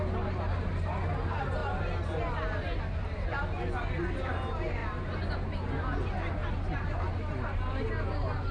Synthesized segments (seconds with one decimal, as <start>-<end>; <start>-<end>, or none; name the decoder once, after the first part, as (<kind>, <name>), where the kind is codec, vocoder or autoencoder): none

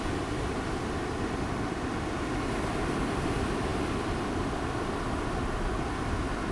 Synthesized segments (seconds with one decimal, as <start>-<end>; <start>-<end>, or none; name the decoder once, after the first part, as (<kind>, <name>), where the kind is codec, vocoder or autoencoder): none

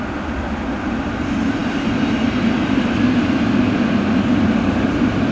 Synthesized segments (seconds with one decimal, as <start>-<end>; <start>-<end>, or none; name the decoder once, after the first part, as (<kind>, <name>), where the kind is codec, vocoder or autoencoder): none

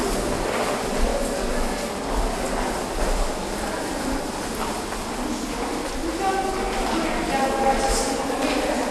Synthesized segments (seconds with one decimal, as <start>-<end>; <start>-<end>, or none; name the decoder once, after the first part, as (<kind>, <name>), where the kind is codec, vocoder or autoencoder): none

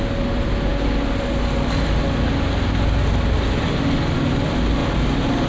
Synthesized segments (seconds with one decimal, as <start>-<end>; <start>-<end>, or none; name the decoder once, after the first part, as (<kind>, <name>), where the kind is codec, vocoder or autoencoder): none

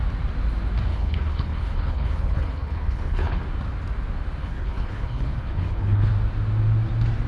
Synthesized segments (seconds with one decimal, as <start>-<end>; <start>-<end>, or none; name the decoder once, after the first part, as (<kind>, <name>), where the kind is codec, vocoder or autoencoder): 0.9-3.4 (codec, HILCodec); 4.4-6.1

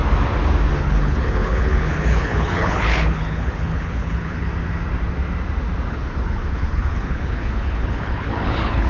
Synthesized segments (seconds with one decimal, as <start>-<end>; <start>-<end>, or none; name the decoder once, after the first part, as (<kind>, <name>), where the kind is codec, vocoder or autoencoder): 0.8-4.5 (codec, HILCodec); 5.9-8.9